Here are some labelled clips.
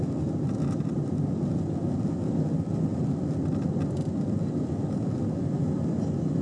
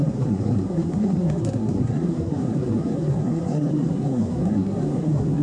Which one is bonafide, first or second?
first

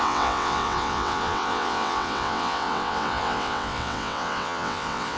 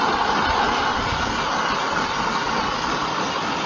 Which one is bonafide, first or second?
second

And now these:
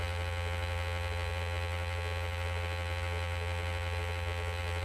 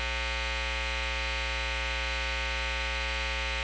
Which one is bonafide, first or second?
second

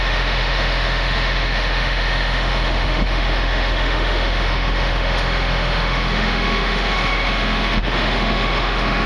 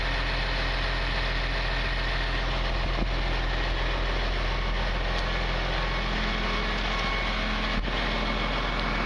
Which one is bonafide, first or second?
second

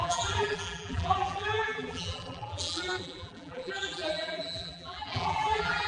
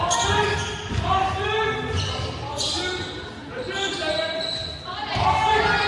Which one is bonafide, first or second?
second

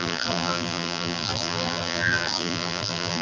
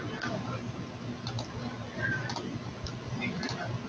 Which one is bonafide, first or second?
second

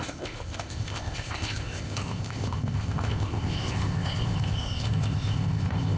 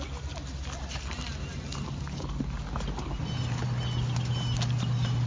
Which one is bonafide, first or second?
second